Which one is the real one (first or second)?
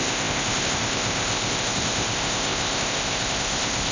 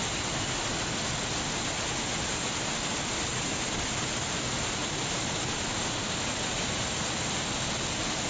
second